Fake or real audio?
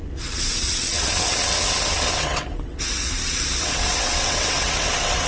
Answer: fake